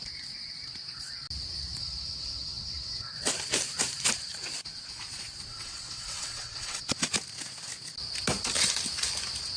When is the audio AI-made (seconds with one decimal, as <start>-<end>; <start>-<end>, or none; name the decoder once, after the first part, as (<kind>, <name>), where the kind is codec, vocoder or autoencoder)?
1.8-3.2 (vocoder, WaveNeXt); 5.5-7.0